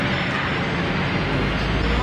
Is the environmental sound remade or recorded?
recorded